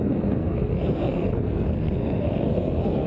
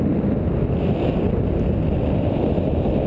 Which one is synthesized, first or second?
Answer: first